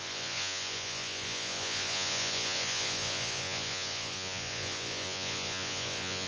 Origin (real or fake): fake